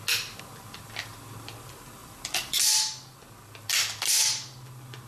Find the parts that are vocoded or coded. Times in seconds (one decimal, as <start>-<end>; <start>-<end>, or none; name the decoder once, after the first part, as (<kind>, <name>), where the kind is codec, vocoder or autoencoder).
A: none